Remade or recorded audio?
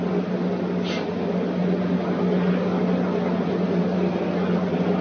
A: recorded